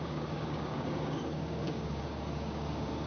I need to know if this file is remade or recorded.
remade